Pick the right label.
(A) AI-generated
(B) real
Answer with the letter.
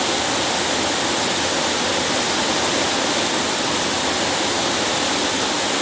B